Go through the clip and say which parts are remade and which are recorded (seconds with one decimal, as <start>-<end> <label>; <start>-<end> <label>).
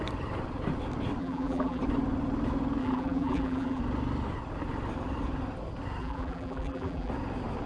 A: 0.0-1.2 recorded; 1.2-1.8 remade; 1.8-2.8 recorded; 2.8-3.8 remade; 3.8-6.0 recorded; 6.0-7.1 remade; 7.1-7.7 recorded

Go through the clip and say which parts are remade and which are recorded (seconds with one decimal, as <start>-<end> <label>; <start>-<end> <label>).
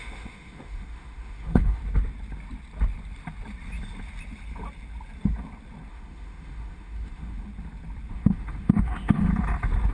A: 0.0-1.8 remade; 1.8-5.9 recorded; 5.9-7.5 remade; 7.5-8.1 recorded; 8.1-9.3 remade; 9.3-9.9 recorded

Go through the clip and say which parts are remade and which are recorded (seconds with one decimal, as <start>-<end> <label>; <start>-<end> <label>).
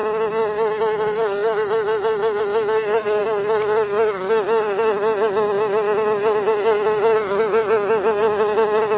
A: 0.0-9.0 recorded